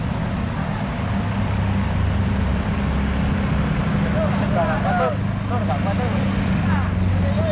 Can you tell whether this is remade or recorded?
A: recorded